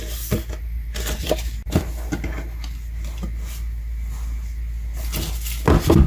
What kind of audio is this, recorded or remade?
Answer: recorded